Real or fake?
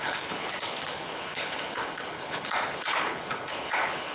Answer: fake